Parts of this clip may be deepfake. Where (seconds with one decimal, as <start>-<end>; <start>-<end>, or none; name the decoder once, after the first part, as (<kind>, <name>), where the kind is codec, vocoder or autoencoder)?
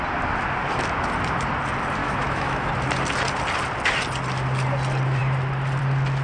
2.0-2.7 (autoencoder, DAC-VAE)